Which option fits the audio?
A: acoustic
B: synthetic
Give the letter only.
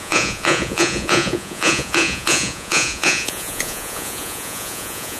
B